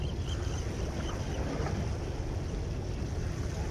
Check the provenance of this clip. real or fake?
real